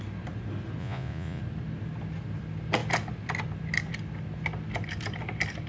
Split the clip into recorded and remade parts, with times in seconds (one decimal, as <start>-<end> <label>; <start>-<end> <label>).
0.0-0.8 recorded; 0.8-1.4 remade; 1.4-5.7 recorded